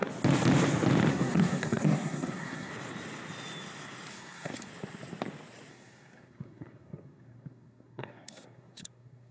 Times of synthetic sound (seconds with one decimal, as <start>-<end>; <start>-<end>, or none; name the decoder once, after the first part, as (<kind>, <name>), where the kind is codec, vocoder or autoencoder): 1.1-2.7 (codec, SNAC); 4.1-4.7; 5.7-9.3